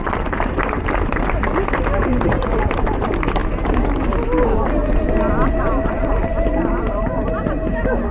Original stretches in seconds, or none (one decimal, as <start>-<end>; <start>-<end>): 3.4-5.3; 6.3-8.1